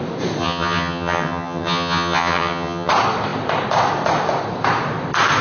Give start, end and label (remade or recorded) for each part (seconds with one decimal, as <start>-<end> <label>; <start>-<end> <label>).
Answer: 0.0-0.4 recorded; 0.4-2.9 remade; 2.9-5.4 recorded